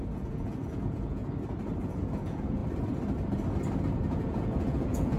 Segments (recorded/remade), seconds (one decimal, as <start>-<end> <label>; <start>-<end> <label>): 0.0-1.2 remade; 1.2-1.8 recorded; 1.8-2.6 remade; 2.6-4.1 recorded; 4.1-5.2 remade